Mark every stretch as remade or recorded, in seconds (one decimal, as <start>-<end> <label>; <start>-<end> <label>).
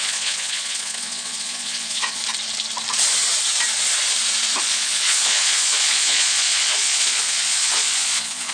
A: 0.0-2.2 remade; 2.2-4.6 recorded; 4.6-8.5 remade